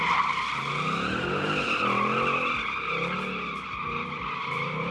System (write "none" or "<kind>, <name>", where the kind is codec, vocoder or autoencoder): none